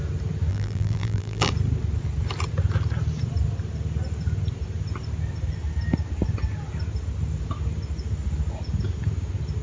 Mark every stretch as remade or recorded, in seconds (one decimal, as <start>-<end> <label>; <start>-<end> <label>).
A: 0.0-0.5 recorded; 0.5-1.5 remade; 1.5-9.6 recorded